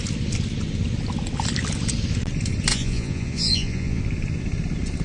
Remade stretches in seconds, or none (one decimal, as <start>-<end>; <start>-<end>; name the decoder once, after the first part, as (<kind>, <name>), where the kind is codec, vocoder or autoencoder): 2.7-4.0 (vocoder, Vocos)